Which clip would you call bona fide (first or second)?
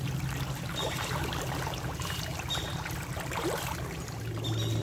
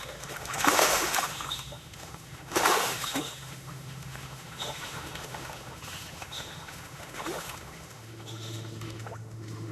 first